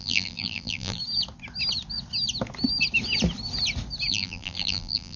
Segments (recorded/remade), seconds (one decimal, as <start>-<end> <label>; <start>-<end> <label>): 0.0-1.0 remade; 1.0-4.1 recorded; 4.1-5.2 remade